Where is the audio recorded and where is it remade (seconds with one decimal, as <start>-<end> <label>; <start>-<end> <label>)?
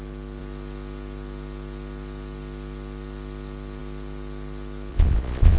0.0-4.9 recorded; 4.9-5.6 remade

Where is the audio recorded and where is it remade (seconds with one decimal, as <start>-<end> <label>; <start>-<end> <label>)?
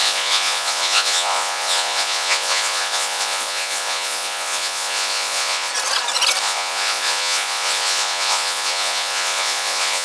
0.0-5.7 remade; 5.7-6.4 recorded; 6.4-10.0 remade